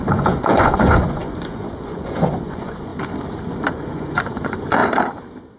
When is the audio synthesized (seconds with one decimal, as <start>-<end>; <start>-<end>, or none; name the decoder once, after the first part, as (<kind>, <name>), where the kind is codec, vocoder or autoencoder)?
0.0-2.9 (vocoder, Vocos); 3.7-4.8